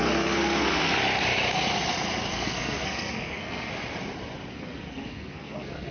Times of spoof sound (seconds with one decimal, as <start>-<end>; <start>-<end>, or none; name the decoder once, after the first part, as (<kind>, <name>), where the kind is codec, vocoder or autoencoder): 0.0-0.8 (codec, SNAC); 2.3-3.7; 4.5-5.9